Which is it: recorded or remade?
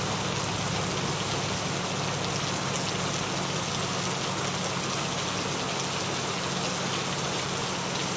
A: recorded